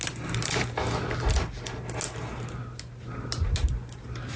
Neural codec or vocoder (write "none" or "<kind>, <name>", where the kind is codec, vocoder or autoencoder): none